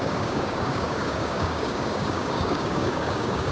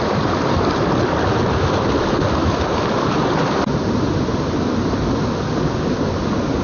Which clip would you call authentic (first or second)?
second